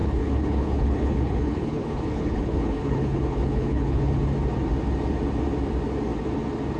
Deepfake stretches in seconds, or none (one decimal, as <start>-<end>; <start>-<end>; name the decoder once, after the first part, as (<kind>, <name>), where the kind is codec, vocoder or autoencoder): 0.0-4.1 (codec, HILCodec)